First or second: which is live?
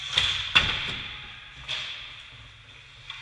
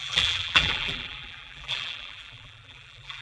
first